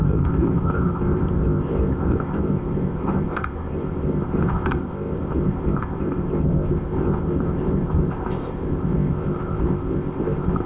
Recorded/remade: remade